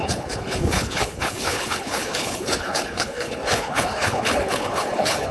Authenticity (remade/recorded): remade